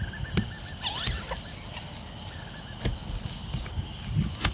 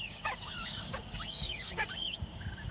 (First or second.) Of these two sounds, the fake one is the second